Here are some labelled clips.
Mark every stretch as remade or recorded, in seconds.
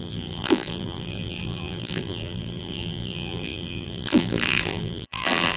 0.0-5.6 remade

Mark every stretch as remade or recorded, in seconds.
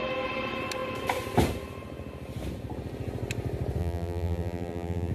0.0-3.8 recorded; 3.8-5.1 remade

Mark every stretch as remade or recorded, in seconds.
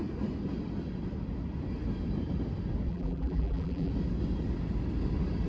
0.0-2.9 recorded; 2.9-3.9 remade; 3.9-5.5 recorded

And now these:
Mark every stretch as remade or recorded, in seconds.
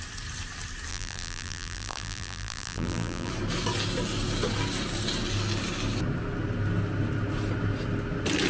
0.0-0.9 recorded; 0.9-3.3 remade; 3.3-8.5 recorded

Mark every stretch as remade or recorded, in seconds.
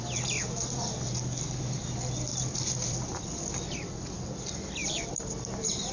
0.0-2.3 recorded; 2.3-3.9 remade; 3.9-5.9 recorded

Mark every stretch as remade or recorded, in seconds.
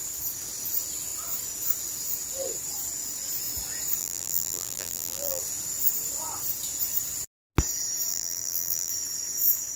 0.0-4.0 recorded; 4.0-5.4 remade; 5.4-8.1 recorded; 8.1-8.9 remade; 8.9-9.8 recorded